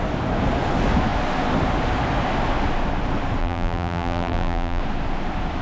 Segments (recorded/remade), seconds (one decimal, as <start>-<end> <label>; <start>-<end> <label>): 0.0-3.4 recorded; 3.4-4.8 remade; 4.8-5.6 recorded